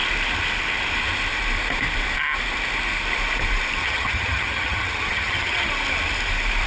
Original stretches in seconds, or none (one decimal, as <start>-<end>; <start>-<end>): 0.0-3.8; 5.7-6.7